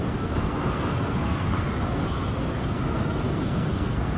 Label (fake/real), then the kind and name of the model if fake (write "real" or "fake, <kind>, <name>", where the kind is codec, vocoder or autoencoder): fake, codec, SNAC